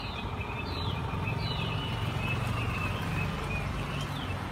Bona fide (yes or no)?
yes